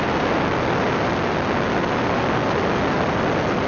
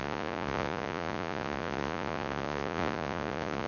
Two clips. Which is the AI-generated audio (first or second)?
second